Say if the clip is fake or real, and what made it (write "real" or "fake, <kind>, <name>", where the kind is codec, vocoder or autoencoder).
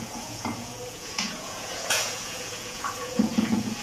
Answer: fake, vocoder, Vocos